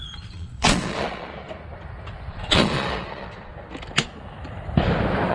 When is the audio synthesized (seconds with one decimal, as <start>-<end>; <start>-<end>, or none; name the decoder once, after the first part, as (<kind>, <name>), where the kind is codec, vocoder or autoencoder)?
0.0-1.3 (vocoder, Vocos); 2.3-3.5